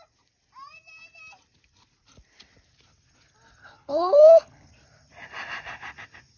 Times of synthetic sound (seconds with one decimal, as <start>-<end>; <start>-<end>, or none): 3.6-4.7